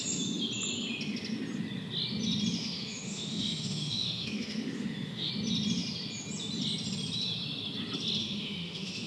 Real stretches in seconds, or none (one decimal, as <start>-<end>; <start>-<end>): 0.0-2.6; 5.3-8.2